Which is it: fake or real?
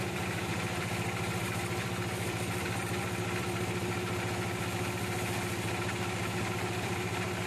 fake